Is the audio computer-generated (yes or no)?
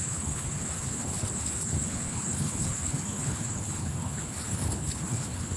yes